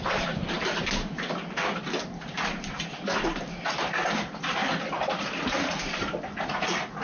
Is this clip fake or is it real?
real